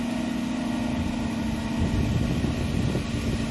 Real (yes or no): yes